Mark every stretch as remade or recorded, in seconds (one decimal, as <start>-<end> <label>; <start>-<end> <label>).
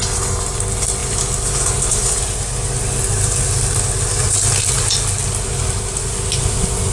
0.0-6.9 recorded